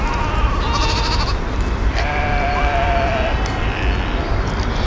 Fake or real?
real